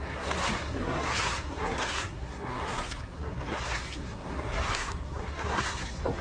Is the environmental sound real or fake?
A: fake